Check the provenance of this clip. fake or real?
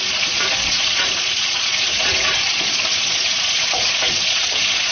fake